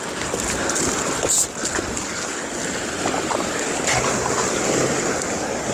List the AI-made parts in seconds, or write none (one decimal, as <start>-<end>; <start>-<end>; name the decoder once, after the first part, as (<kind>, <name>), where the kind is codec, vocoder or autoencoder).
none